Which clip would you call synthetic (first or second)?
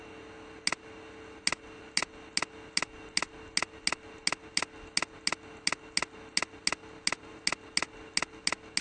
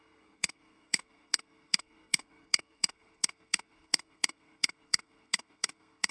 second